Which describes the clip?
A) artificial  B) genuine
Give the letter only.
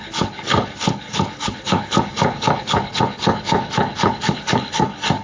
A